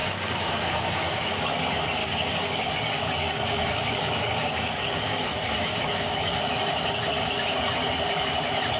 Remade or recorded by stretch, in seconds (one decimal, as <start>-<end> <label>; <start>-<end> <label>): 0.0-1.3 remade; 1.3-2.0 recorded; 2.0-2.7 remade; 2.7-3.2 recorded; 3.2-6.4 remade; 6.4-8.8 recorded